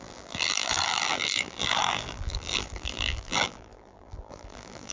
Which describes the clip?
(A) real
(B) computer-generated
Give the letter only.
B